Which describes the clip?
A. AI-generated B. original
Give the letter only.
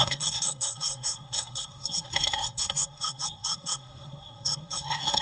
A